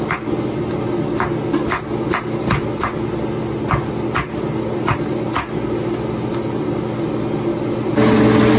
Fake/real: real